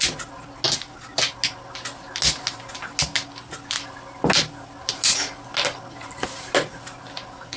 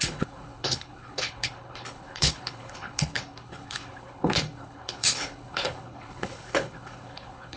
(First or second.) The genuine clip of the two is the first